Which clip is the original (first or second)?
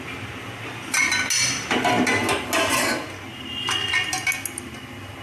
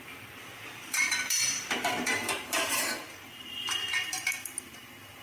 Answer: first